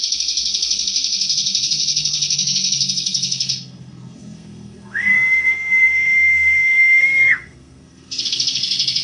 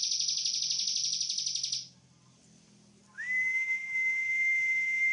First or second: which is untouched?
second